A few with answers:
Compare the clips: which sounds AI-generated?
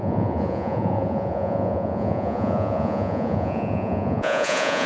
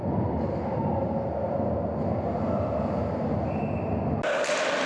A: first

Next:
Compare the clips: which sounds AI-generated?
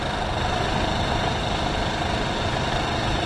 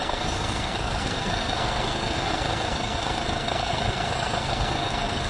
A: second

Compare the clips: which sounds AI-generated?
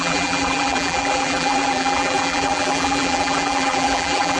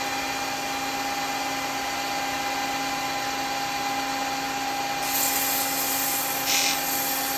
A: first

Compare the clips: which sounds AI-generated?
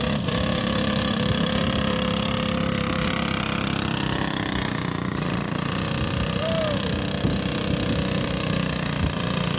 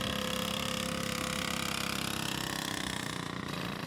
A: first